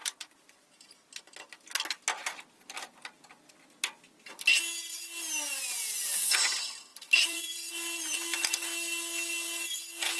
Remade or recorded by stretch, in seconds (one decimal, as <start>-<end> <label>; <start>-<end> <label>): 0.0-6.9 recorded; 6.9-7.7 remade; 7.7-10.2 recorded